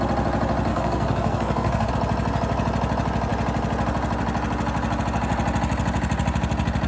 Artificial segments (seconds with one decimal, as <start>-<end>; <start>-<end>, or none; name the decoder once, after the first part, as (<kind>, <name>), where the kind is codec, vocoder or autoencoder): 0.7-1.9 (codec, SNAC)